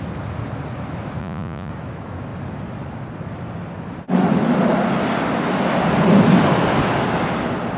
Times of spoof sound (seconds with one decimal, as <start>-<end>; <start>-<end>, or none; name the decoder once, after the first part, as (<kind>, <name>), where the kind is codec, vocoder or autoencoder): 1.2-1.7 (vocoder, Vocos)

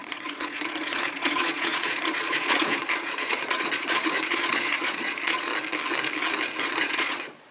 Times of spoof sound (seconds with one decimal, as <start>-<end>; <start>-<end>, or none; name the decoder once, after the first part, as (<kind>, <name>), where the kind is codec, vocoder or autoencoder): 0.0-5.5 (vocoder, Vocos); 6.6-7.5

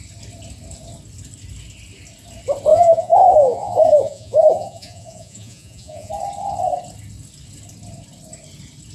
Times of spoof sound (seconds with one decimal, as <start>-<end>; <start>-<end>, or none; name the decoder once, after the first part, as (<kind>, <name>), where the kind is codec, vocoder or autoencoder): 2.7-6.1 (vocoder, Vocos)

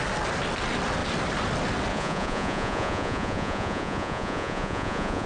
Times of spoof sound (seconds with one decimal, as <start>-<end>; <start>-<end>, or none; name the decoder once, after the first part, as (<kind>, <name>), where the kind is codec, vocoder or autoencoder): 1.9-5.3 (vocoder, Vocos)